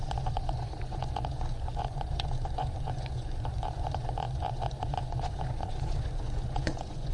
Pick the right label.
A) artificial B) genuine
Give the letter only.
A